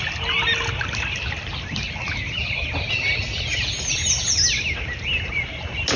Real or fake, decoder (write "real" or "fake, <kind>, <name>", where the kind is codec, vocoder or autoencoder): real